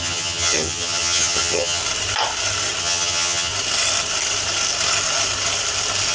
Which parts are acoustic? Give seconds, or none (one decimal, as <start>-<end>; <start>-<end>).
1.8-2.8; 3.5-6.1